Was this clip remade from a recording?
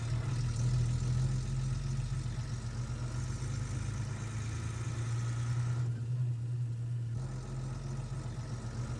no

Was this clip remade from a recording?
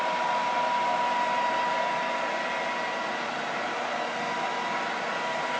no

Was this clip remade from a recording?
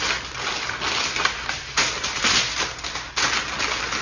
no